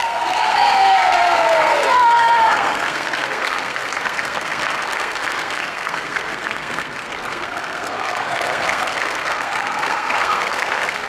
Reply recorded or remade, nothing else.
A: remade